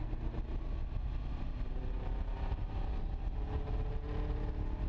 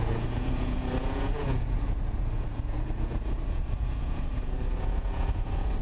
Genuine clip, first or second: first